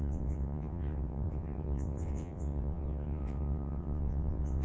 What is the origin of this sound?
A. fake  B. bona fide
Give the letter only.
A